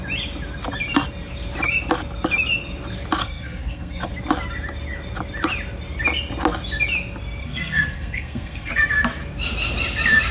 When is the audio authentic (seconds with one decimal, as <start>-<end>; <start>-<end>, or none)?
0.0-3.2; 4.1-7.4; 8.7-10.3